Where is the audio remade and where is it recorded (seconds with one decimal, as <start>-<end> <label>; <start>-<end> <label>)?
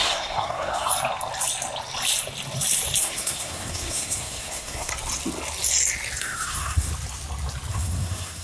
0.0-0.9 remade; 0.9-3.0 recorded; 3.0-4.9 remade; 4.9-6.2 recorded; 6.2-6.9 remade; 6.9-7.7 recorded; 7.7-8.4 remade